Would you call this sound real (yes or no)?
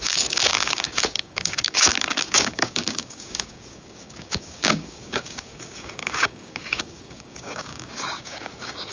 no